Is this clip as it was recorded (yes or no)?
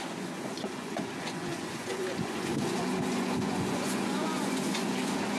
no